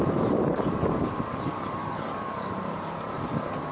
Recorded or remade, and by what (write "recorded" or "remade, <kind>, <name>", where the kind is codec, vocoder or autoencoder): remade, vocoder, BigVGAN v2